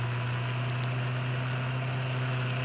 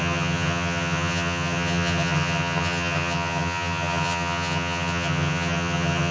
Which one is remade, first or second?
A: second